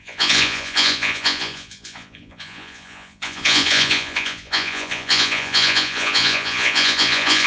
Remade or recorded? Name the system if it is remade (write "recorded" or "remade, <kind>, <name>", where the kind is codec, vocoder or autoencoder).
remade, vocoder, Vocos